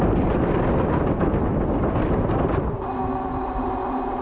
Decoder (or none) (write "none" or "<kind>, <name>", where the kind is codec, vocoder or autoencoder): none